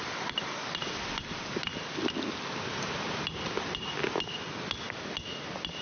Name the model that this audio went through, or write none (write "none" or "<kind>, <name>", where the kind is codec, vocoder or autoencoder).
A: none